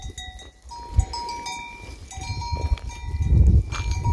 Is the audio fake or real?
real